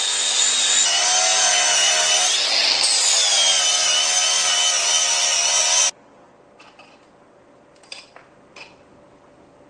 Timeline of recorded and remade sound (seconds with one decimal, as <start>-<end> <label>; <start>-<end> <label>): 0.0-1.3 recorded; 1.3-1.9 remade; 1.9-9.7 recorded